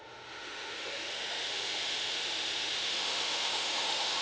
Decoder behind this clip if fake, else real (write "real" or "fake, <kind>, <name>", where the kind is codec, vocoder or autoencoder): fake, autoencoder, DAC-VAE